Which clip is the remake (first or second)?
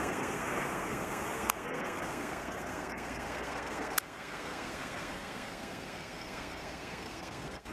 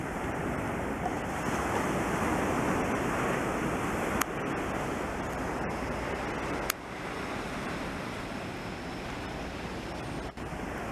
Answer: first